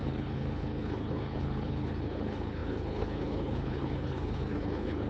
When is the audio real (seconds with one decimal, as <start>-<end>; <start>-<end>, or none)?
none